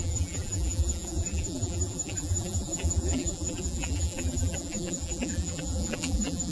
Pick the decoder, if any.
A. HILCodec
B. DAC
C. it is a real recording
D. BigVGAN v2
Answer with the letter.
D